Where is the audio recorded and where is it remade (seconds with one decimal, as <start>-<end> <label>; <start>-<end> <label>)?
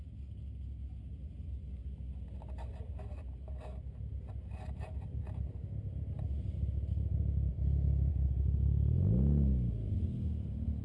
0.0-7.5 recorded; 7.5-8.1 remade; 8.1-10.8 recorded